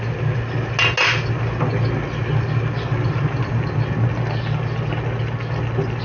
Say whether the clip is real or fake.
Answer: real